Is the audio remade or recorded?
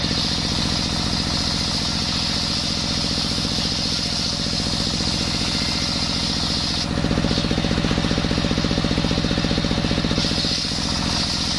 recorded